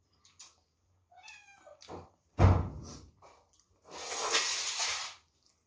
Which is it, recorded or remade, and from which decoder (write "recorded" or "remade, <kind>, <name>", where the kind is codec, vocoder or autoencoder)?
recorded